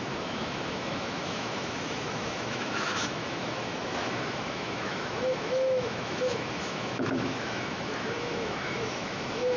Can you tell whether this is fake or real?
fake